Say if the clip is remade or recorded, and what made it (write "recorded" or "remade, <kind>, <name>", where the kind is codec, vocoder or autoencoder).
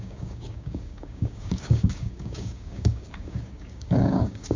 remade, codec, DAC